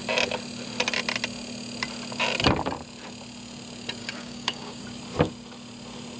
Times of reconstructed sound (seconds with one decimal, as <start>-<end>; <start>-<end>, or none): 4.0-4.8